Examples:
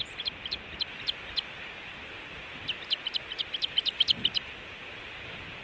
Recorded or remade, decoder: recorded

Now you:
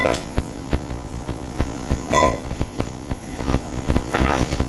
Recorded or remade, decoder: remade, vocoder, Vocos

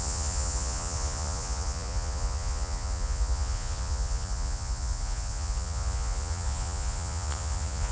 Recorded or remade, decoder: remade, vocoder, Vocos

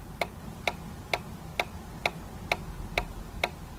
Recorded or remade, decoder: recorded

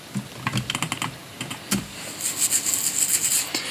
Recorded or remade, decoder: recorded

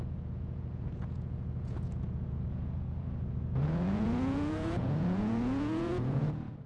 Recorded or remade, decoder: remade, vocoder, Vocos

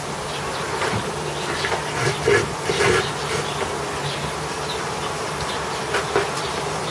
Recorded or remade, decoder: recorded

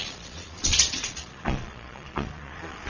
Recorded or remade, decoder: remade, vocoder, Vocos